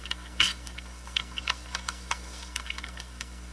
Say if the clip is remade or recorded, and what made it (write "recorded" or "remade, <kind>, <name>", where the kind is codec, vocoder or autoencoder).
remade, codec, SNAC